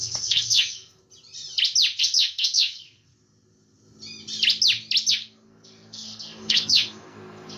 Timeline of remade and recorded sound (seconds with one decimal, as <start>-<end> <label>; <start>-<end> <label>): 0.0-1.0 remade; 1.0-2.0 recorded; 2.0-3.1 remade; 3.1-5.1 recorded; 5.1-7.6 remade